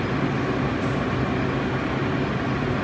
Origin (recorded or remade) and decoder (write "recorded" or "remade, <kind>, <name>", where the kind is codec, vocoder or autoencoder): recorded